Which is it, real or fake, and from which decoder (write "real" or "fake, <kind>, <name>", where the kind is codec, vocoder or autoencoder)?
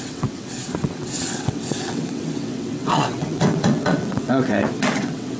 fake, vocoder, WaveNeXt